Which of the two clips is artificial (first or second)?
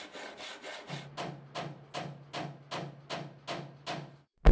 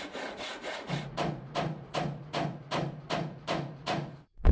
second